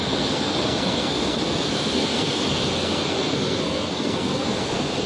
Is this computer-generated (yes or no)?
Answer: yes